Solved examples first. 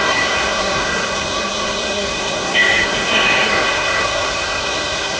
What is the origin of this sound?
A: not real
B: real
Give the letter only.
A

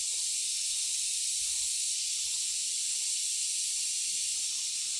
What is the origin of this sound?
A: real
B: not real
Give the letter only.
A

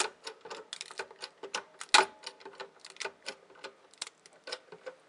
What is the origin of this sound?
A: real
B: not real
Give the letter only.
A